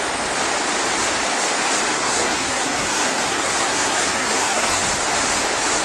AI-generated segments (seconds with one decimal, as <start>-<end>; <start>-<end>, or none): 1.9-4.8